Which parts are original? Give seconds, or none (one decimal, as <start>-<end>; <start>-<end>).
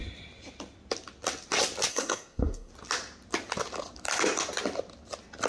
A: 0.0-1.9; 2.7-5.5